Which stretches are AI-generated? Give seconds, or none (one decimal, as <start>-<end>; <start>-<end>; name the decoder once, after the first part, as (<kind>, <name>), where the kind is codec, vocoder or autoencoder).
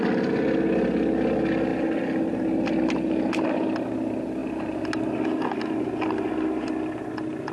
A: none